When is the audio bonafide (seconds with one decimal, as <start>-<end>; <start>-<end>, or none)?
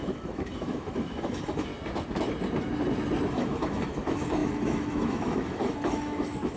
1.7-3.3